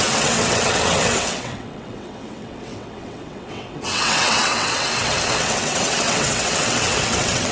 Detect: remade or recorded remade